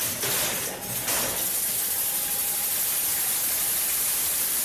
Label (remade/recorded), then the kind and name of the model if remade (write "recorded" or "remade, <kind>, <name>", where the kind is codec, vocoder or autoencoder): recorded